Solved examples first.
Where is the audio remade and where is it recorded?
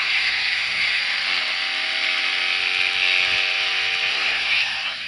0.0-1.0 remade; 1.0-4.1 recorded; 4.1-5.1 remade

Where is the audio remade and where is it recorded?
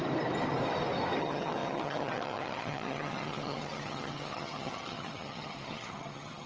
0.0-1.2 recorded; 1.2-6.5 remade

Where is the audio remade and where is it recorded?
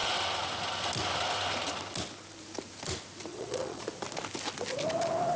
0.0-3.3 recorded; 3.3-3.9 remade; 3.9-5.4 recorded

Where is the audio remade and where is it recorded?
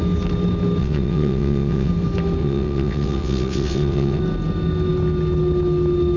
0.0-0.8 recorded; 0.8-1.9 remade; 1.9-2.4 recorded; 2.4-4.2 remade; 4.2-6.2 recorded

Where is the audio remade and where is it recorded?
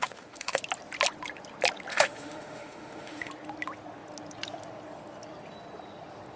0.0-0.6 remade; 0.6-1.9 recorded; 1.9-3.3 remade; 3.3-6.4 recorded